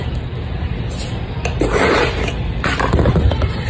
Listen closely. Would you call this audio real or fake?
fake